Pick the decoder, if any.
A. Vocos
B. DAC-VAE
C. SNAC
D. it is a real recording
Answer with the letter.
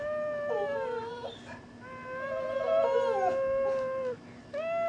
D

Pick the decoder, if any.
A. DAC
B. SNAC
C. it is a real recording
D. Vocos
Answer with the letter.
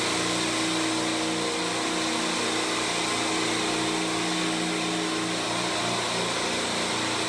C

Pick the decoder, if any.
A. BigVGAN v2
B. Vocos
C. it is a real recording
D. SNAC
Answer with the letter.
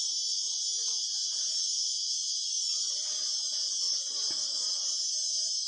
C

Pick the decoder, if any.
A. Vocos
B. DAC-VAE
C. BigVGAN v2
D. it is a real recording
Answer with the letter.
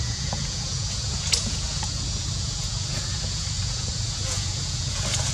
A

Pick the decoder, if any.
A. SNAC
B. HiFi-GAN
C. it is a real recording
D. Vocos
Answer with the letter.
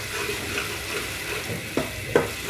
C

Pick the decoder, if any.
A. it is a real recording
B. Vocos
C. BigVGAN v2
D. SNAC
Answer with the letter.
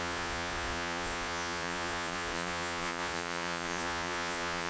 B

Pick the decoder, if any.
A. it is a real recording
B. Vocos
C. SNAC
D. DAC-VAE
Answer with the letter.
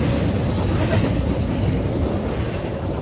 A